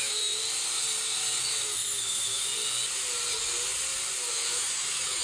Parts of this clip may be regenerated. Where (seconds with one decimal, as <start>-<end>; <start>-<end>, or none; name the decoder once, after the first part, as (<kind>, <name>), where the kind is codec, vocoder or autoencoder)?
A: 0.0-0.4 (autoencoder, DAC-VAE); 1.4-2.5; 4.3-5.2